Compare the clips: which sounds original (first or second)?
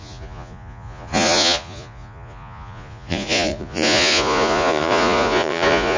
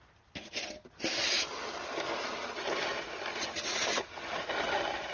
second